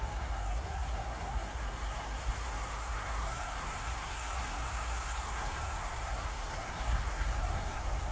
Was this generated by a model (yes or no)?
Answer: yes